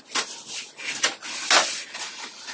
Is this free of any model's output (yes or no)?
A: yes